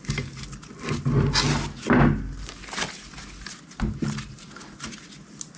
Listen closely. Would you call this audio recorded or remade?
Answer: recorded